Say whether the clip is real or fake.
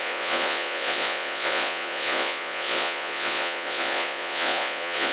fake